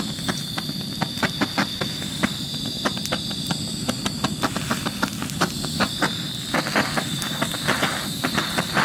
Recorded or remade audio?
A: remade